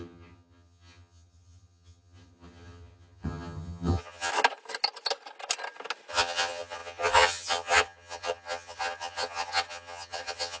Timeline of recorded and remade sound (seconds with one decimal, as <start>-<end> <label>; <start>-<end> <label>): 0.0-4.3 remade; 4.3-6.1 recorded; 6.1-10.6 remade

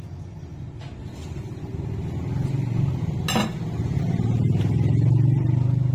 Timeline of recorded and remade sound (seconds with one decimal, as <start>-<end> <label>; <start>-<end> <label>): 0.0-5.9 recorded

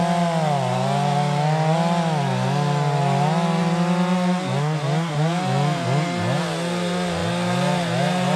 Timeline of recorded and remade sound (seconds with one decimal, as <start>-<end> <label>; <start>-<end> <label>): 0.0-8.4 recorded

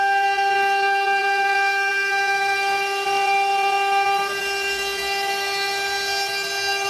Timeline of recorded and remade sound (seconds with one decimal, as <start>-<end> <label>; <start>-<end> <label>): 0.0-6.9 recorded

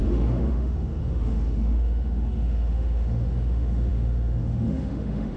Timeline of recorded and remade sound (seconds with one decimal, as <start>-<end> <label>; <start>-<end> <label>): 0.0-5.4 remade

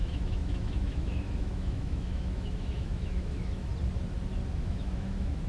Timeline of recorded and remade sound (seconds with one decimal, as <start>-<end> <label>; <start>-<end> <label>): 0.0-3.7 remade; 3.7-4.6 recorded; 4.6-5.5 remade